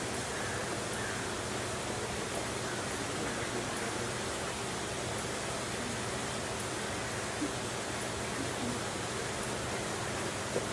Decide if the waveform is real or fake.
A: real